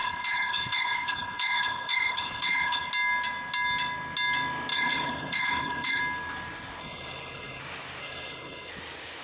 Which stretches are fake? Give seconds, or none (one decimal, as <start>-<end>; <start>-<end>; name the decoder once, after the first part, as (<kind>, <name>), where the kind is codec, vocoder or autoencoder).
0.0-2.9 (codec, HILCodec); 4.7-6.0; 6.8-7.6; 8.0-8.7